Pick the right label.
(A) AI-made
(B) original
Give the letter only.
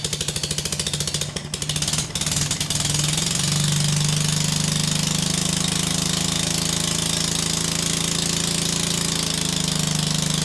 B